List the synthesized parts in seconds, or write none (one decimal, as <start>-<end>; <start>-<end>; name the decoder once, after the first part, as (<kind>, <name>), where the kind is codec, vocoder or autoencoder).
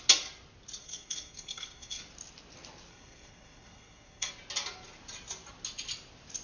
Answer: 0.8-2.0 (codec, SNAC); 2.9-4.3